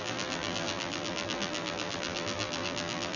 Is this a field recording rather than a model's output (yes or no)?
no